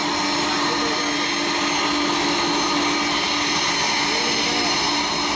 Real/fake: real